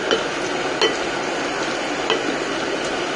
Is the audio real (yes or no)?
yes